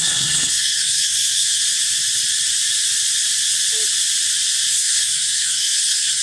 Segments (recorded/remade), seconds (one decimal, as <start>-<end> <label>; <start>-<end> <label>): 0.0-1.6 remade; 1.6-4.7 recorded; 4.7-6.2 remade